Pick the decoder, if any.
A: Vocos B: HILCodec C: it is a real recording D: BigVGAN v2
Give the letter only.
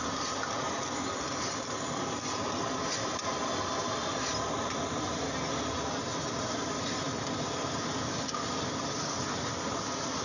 C